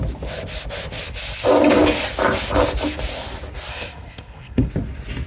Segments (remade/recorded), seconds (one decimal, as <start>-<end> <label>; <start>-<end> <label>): 0.0-3.7 recorded; 3.7-4.7 remade; 4.7-5.3 recorded